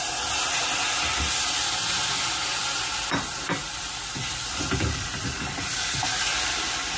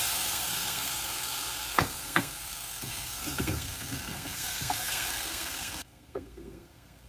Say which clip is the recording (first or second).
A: first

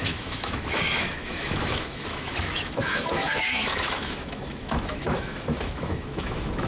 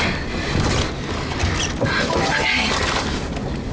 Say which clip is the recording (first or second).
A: second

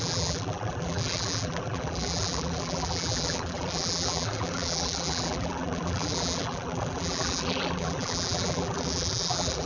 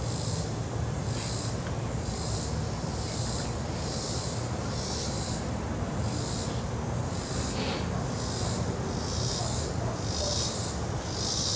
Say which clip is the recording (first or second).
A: second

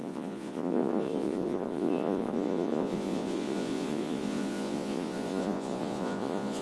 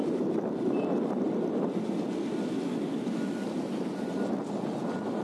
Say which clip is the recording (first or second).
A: second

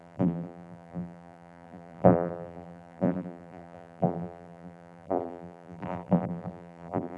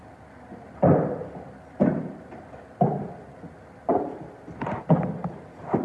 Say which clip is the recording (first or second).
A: second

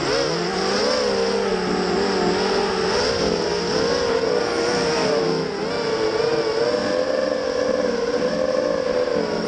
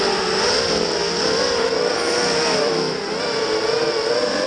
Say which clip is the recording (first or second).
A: first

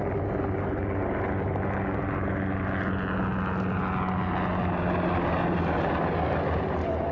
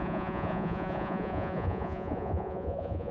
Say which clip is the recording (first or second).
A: first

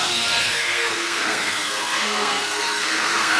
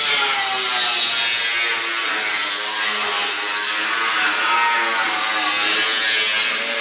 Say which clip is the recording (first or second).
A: second